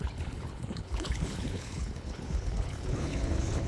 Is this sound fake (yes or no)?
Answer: yes